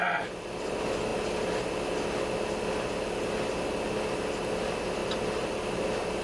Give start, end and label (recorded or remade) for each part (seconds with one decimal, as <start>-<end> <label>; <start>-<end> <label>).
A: 0.0-6.2 recorded